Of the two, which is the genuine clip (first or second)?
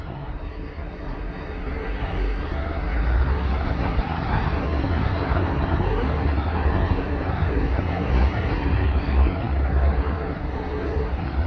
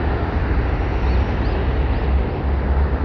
second